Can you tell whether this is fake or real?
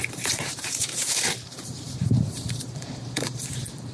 fake